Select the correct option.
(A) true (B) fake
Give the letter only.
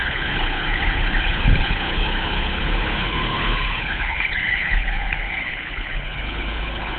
B